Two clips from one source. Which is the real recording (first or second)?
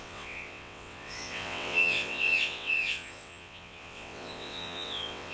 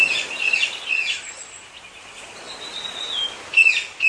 second